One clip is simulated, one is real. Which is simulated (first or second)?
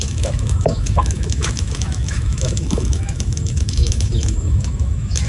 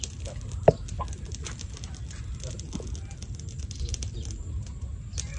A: first